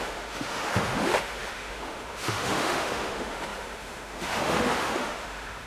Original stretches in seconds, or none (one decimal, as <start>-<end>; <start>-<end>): none